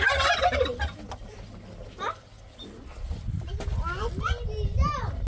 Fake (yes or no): no